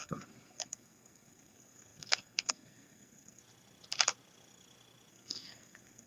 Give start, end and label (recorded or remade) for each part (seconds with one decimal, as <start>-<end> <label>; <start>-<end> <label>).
0.0-3.4 remade; 3.4-5.1 recorded; 5.1-6.1 remade